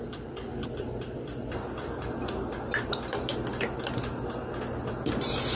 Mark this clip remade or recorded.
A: recorded